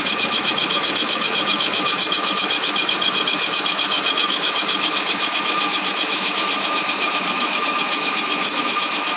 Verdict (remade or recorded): remade